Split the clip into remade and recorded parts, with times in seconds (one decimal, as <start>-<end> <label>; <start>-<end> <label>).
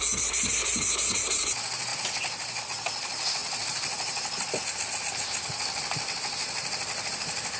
0.0-7.6 recorded